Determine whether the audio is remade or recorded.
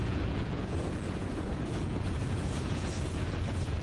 remade